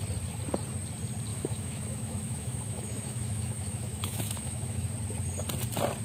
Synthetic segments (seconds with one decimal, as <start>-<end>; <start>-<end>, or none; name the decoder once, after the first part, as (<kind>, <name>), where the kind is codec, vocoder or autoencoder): 1.3-4.9 (autoencoder, DAC-VAE)

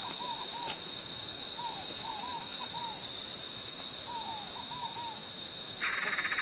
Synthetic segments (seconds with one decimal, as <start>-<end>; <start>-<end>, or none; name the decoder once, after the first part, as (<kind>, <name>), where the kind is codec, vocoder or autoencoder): 0.0-2.8 (autoencoder, DAC-VAE); 3.4-6.4

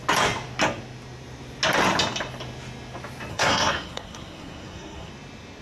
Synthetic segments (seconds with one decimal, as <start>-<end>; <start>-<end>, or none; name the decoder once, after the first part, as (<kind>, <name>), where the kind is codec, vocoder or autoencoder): 3.3-5.1 (codec, SNAC)

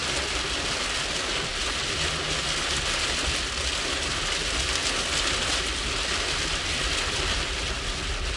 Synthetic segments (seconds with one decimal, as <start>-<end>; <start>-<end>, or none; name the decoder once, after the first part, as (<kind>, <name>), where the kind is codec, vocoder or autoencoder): none

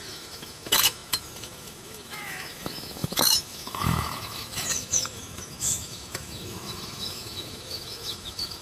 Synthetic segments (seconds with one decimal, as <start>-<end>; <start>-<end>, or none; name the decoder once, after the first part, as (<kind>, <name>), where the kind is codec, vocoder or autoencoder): 0.0-8.6 (autoencoder, DAC-VAE)